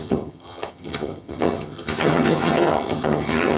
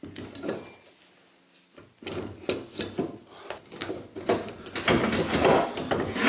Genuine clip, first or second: second